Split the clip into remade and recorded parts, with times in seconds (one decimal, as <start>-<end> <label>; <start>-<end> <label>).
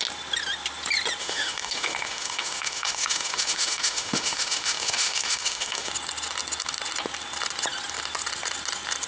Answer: 0.0-1.2 recorded; 1.2-5.9 remade; 5.9-9.1 recorded